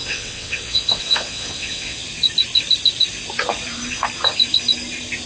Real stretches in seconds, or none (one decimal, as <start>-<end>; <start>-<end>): 2.0-5.3